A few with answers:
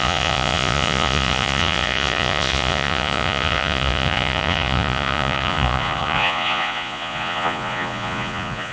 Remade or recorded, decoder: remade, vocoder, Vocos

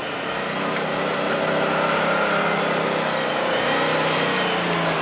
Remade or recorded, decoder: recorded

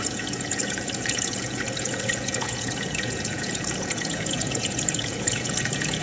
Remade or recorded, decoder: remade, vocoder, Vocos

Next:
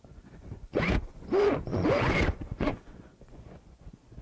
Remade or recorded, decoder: remade, vocoder, Vocos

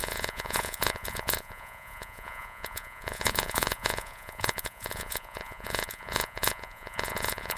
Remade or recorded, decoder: remade, vocoder, Vocos